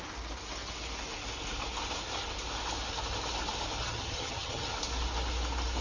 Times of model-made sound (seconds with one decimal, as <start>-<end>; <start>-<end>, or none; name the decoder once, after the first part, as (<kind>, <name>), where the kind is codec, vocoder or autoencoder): 3.8-4.7 (vocoder, HiFi-GAN)